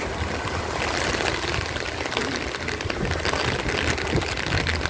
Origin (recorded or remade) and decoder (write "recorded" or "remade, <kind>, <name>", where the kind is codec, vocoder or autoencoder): recorded